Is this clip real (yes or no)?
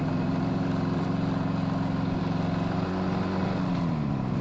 yes